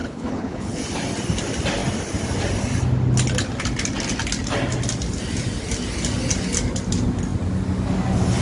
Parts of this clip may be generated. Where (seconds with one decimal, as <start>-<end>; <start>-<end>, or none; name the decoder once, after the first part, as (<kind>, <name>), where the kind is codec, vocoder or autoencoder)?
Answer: 0.0-0.8 (codec, HILCodec)

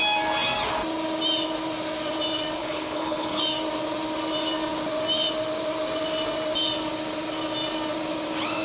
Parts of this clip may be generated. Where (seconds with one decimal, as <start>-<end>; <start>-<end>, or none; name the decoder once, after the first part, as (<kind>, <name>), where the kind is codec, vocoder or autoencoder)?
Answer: 2.6-3.4 (codec, HILCodec)

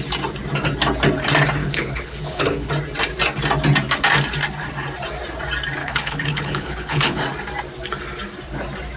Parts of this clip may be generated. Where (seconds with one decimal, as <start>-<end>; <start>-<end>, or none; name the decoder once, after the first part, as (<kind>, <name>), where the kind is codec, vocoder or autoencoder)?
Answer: 1.6-2.7 (codec, HILCodec); 5.8-7.2

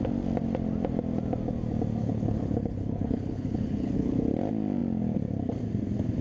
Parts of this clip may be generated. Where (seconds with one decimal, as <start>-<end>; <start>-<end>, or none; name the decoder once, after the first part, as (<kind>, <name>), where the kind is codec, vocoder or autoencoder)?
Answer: 2.0-4.2 (codec, HILCodec)

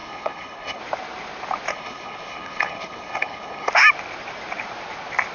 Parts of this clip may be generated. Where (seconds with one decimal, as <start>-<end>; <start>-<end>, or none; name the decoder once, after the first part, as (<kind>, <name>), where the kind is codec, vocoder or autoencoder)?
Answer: 0.0-0.8 (codec, HILCodec); 1.7-3.7

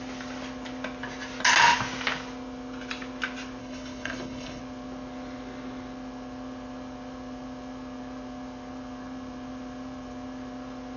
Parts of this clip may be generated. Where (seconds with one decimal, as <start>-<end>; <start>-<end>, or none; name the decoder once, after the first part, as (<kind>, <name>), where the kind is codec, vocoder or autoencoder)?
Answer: 3.6-4.6 (codec, HILCodec)

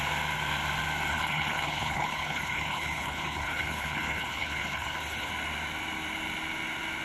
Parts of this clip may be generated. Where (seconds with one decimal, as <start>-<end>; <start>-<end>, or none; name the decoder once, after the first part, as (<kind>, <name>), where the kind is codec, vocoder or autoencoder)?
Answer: 1.1-5.3 (codec, HILCodec)

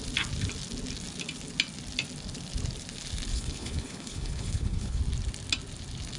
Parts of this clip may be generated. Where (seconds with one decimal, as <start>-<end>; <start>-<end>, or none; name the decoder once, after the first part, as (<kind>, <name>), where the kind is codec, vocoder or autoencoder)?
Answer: 3.3-5.0 (codec, HILCodec)